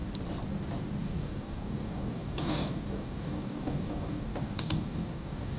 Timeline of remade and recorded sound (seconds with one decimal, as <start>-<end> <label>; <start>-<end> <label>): 0.0-1.0 recorded; 1.0-5.6 remade